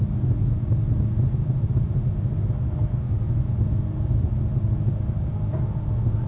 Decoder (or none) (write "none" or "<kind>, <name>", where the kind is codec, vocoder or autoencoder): none